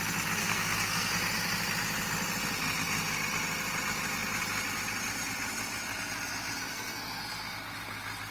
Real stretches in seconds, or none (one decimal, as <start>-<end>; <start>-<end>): 0.0-0.4; 1.1-6.6; 7.2-8.3